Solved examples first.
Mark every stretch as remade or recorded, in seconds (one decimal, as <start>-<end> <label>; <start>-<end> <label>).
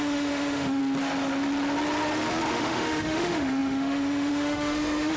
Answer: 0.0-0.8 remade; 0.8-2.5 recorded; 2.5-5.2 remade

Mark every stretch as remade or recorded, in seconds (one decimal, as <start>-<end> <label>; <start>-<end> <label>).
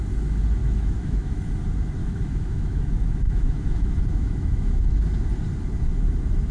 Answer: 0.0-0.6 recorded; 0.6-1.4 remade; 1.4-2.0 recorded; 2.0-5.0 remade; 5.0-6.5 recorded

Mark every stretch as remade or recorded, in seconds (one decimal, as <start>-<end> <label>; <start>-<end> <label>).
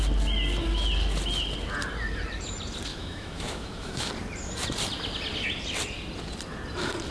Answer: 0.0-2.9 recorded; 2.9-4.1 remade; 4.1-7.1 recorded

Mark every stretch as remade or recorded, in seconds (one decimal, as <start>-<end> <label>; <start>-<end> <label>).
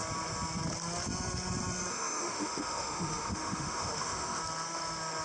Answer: 0.0-1.9 recorded; 1.9-4.4 remade; 4.4-5.2 recorded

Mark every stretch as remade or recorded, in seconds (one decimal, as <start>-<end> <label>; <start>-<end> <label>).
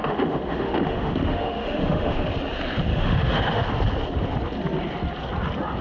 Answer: 0.0-2.3 remade; 2.3-2.9 recorded; 2.9-3.7 remade; 3.7-5.8 recorded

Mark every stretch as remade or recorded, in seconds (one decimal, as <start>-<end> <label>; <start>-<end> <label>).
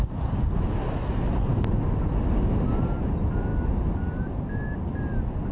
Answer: 0.0-5.5 recorded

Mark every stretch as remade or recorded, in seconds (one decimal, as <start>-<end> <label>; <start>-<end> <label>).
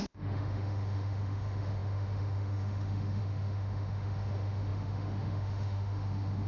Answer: 0.0-6.5 remade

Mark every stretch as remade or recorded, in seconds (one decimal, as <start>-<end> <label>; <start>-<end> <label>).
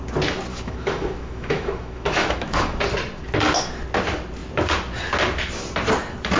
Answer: 0.0-0.5 recorded; 0.5-2.8 remade; 2.8-6.4 recorded